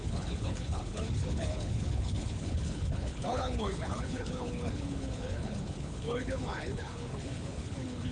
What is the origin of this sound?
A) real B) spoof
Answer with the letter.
B